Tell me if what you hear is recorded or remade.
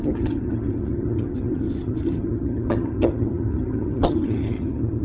remade